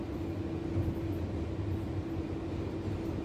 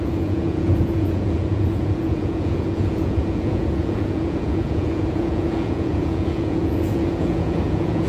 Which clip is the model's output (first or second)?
second